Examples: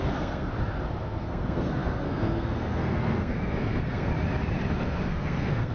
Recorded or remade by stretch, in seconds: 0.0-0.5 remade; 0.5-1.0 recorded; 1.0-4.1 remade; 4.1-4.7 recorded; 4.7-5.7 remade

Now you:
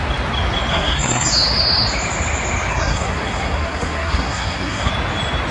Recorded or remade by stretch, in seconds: 0.0-0.7 recorded; 0.7-1.3 remade; 1.3-2.7 recorded; 2.7-4.9 remade; 4.9-5.5 recorded

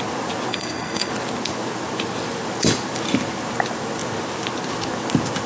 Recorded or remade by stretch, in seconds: 0.0-0.5 recorded; 0.5-1.1 remade; 1.1-5.5 recorded